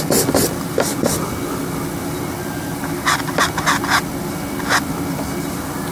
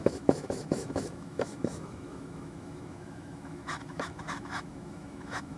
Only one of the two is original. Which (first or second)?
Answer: first